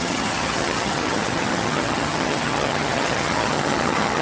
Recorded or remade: remade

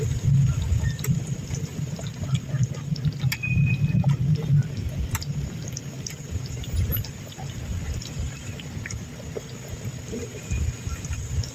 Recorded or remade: recorded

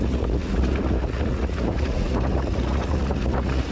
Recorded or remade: remade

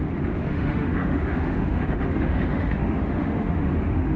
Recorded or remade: remade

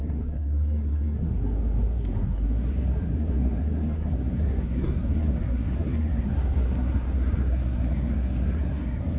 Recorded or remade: remade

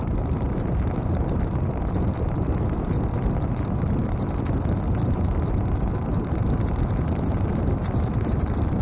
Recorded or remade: remade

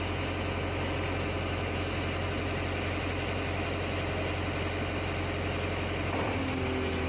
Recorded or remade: recorded